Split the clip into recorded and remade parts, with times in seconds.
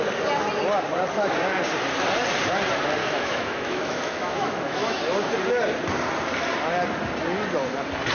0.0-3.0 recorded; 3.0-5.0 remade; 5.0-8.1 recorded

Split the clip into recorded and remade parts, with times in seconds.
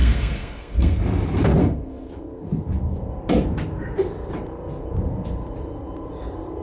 0.0-1.0 remade; 1.0-1.6 recorded; 1.6-2.1 remade; 2.1-6.6 recorded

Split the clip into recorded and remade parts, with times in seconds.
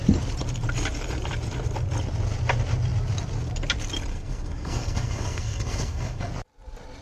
0.0-4.1 recorded; 4.1-6.3 remade; 6.3-7.0 recorded